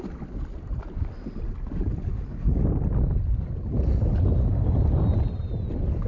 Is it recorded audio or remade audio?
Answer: recorded